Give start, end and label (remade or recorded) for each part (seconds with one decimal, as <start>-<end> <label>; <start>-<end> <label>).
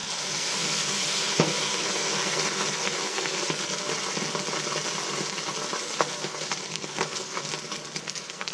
0.0-3.9 remade; 3.9-5.8 recorded; 5.8-7.5 remade; 7.5-8.0 recorded; 8.0-8.5 remade